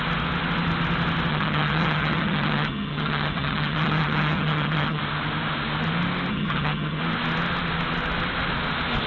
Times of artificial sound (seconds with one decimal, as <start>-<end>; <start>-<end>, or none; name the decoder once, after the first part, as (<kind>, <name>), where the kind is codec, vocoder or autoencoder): 1.3-5.0 (vocoder, HiFi-GAN); 6.3-7.0